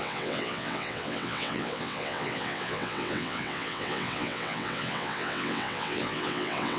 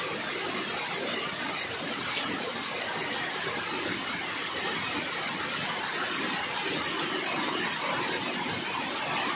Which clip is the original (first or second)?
second